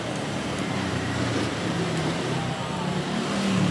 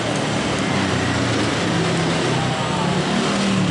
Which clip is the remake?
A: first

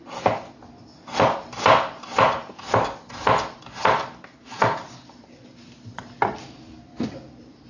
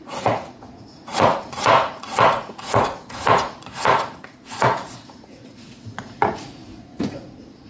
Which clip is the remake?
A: second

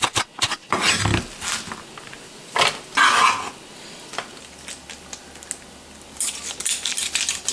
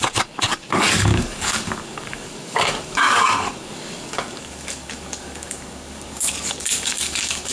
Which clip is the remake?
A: second